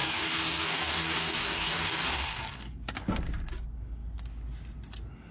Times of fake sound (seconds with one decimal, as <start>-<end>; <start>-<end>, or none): 0.0-2.7